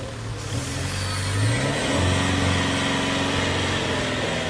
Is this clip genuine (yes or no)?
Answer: yes